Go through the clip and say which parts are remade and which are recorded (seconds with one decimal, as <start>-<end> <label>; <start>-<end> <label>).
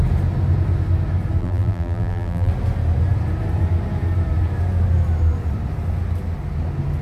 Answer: 0.0-1.4 recorded; 1.4-2.5 remade; 2.5-7.0 recorded